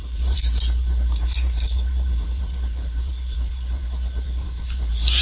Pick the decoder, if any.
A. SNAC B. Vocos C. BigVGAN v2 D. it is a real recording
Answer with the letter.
C